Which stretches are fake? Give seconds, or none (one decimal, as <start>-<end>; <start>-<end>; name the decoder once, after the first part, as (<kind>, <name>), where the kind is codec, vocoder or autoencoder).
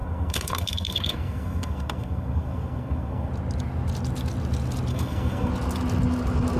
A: 0.0-3.3 (codec, SNAC); 4.9-5.5